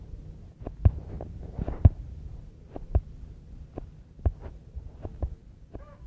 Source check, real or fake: real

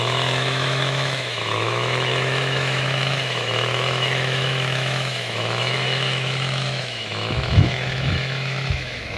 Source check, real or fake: fake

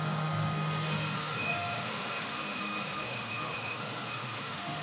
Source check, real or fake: fake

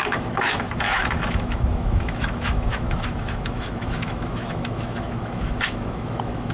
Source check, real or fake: fake